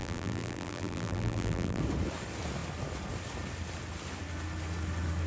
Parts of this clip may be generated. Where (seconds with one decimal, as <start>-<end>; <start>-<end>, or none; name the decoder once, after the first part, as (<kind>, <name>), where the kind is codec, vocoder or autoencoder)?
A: 0.0-1.8 (vocoder, BigVGAN v2)